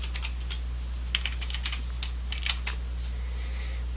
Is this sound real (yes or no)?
yes